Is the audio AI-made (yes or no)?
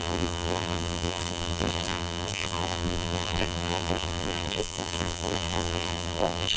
yes